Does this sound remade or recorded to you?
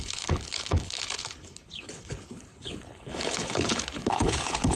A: remade